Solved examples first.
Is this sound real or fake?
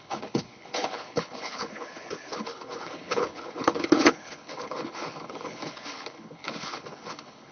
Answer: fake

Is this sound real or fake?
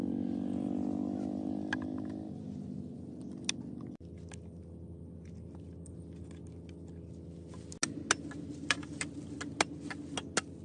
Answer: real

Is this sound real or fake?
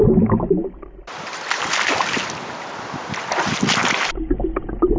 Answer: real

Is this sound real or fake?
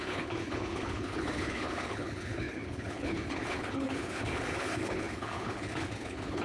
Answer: fake